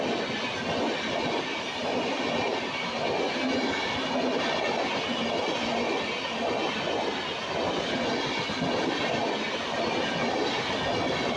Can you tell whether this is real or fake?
real